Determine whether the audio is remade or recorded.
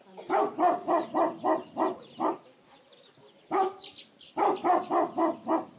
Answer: recorded